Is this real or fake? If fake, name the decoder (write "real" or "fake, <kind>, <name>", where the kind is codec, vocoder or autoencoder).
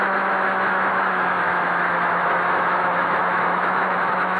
fake, autoencoder, DAC-VAE